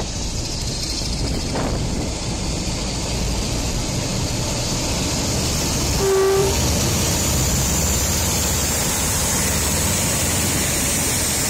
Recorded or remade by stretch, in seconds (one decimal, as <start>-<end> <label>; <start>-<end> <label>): 0.0-6.4 recorded; 6.4-10.9 remade; 10.9-11.5 recorded